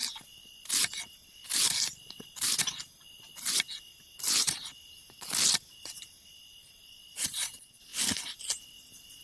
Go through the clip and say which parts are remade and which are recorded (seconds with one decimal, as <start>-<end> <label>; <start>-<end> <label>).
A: 0.0-9.2 recorded